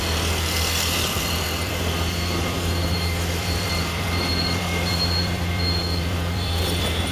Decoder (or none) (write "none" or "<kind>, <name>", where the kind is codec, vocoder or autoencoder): vocoder, BigVGAN v2